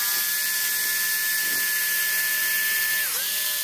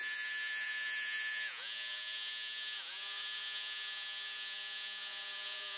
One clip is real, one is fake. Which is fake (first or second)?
second